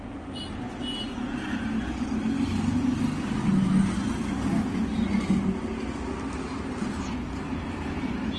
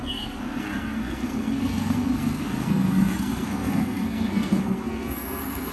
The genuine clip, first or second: first